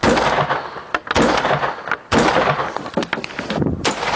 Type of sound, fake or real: real